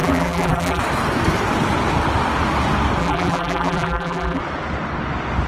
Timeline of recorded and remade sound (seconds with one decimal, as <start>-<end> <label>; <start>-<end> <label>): 0.0-0.8 remade; 0.8-3.0 recorded; 3.0-4.4 remade; 4.4-5.5 recorded